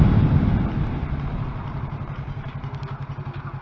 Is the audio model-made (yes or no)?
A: no